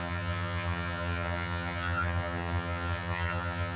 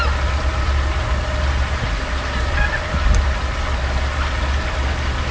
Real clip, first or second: second